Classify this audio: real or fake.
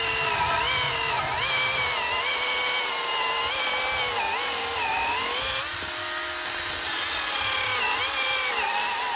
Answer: real